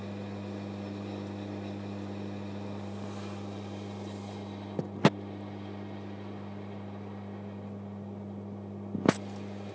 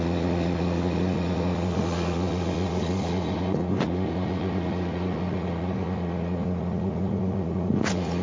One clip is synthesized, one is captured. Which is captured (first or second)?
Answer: first